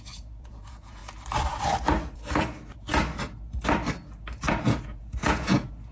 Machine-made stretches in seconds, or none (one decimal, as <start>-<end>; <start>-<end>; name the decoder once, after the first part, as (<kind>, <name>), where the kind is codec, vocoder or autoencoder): 0.0-1.0 (vocoder, Vocos); 4.5-5.9